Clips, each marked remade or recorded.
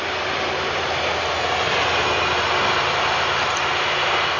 recorded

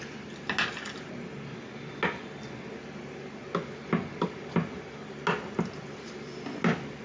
recorded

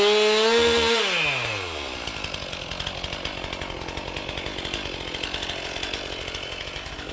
recorded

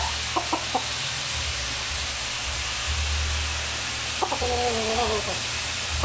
recorded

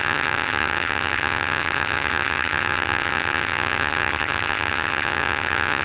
remade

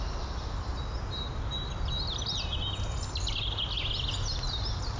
recorded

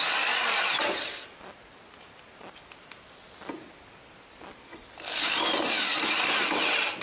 recorded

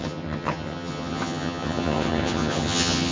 remade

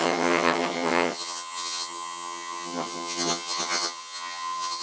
remade